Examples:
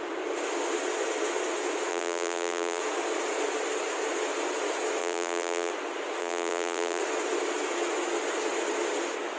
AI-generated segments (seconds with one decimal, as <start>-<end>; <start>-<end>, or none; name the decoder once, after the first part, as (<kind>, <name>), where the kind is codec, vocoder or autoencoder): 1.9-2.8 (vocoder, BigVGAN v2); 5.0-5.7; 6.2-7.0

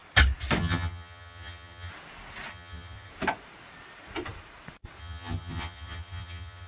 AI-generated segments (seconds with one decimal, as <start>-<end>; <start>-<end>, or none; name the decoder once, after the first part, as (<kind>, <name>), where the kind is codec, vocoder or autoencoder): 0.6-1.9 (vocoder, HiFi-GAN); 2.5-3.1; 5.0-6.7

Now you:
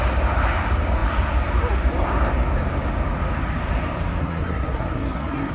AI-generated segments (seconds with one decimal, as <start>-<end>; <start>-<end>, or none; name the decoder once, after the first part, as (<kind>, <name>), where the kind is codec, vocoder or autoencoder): 4.2-5.5 (codec, SNAC)